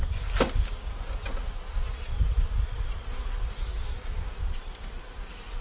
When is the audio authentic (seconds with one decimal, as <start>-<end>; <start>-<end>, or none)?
0.0-3.7